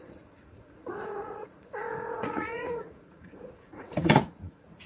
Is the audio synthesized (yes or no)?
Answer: yes